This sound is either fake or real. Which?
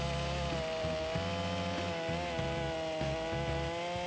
real